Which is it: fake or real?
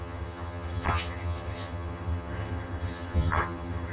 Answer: fake